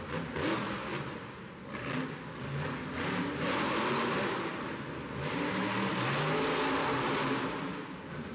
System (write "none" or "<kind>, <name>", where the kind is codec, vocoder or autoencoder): none